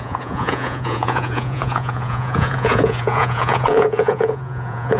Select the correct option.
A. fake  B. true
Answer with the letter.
A